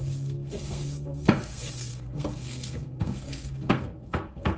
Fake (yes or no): yes